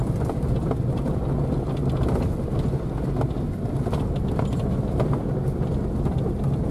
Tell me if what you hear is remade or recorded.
recorded